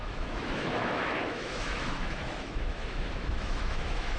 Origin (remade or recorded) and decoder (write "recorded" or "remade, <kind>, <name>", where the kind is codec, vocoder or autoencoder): remade, autoencoder, DAC-VAE